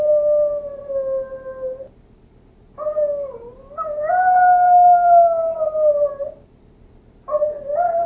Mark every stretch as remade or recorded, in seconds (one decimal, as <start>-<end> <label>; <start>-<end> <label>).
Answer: 0.0-8.1 recorded